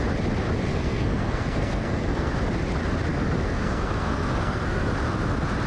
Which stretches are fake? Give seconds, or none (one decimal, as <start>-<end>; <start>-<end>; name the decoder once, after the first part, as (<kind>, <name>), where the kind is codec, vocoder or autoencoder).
0.7-2.3 (codec, SNAC); 3.1-4.9